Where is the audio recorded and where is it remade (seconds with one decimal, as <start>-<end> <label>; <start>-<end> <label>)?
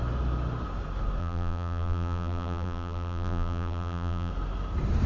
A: 0.0-1.2 recorded; 1.2-4.3 remade; 4.3-5.1 recorded